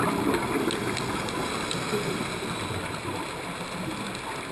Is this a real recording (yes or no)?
yes